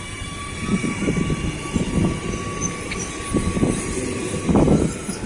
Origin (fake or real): real